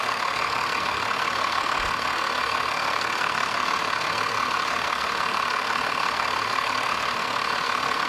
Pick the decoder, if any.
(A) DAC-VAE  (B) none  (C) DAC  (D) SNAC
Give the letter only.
D